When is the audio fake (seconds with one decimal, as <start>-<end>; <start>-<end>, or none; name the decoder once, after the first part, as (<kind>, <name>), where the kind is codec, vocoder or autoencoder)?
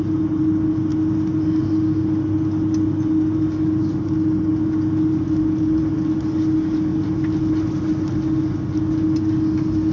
none